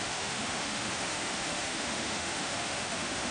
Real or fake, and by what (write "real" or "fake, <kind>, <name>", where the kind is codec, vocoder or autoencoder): fake, autoencoder, DAC-VAE